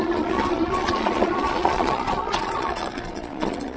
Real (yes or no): no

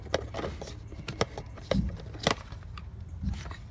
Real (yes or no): yes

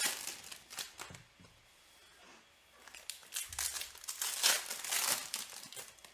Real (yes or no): yes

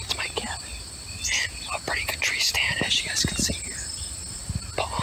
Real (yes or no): yes